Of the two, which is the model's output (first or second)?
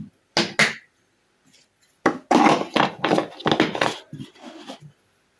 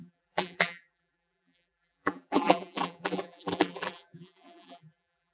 second